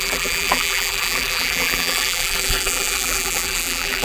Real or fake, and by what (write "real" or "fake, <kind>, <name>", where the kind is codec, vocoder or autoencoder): fake, vocoder, BigVGAN v2